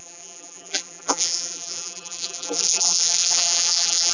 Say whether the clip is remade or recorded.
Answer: remade